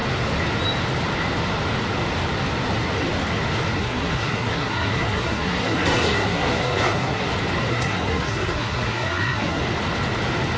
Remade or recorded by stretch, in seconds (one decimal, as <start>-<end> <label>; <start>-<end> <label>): 0.0-3.8 recorded; 3.8-7.3 remade; 7.3-7.7 recorded; 7.7-9.6 remade; 9.6-10.6 recorded